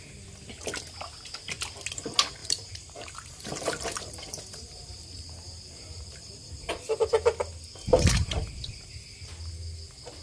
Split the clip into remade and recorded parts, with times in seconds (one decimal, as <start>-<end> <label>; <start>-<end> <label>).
0.0-2.4 recorded; 2.4-6.7 remade; 6.7-7.9 recorded; 7.9-8.8 remade; 8.8-10.2 recorded